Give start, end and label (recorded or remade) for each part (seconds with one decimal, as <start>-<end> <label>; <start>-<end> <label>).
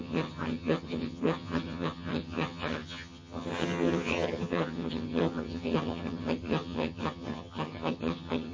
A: 0.0-8.5 remade